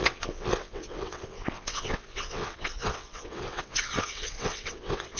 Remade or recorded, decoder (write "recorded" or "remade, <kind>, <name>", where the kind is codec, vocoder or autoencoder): remade, vocoder, WaveNeXt